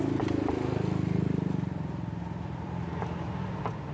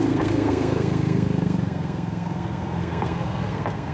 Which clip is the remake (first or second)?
second